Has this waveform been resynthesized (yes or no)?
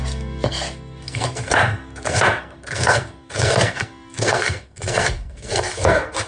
yes